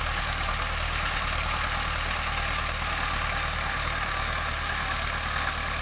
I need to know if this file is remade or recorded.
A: recorded